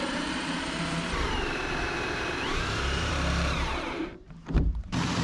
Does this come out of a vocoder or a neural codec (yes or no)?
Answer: yes